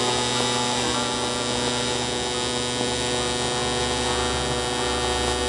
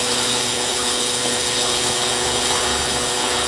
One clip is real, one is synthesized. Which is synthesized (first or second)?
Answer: second